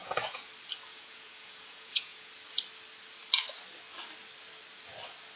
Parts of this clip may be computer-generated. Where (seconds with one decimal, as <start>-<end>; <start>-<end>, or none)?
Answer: 0.0-0.5; 0.9-2.3